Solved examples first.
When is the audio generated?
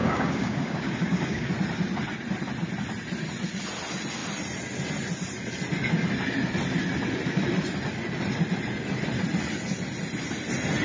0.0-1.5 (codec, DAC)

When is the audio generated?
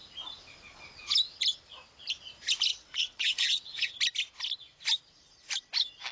2.7-3.9 (vocoder, WaveNeXt)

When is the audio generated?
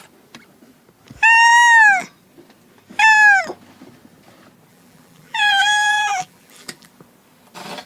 4.7-6.9 (vocoder, BigVGAN v2)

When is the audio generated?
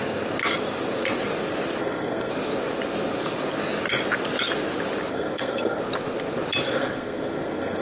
1.8-2.3 (codec, SNAC); 5.1-5.8; 6.7-7.8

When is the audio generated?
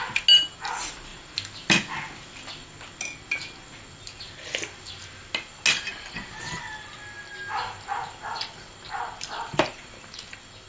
none